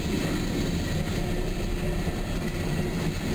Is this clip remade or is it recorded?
recorded